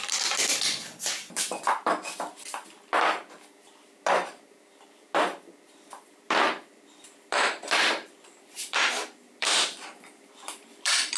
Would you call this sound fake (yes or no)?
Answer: yes